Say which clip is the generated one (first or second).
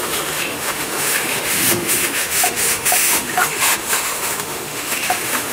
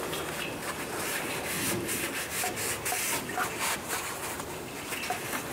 first